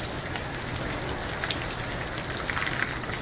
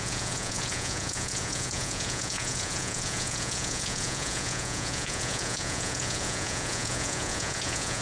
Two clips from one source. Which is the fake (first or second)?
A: second